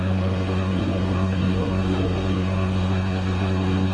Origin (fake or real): fake